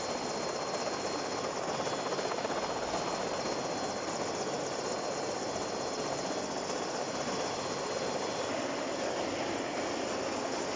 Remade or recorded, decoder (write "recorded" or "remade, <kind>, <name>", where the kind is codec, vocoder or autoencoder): recorded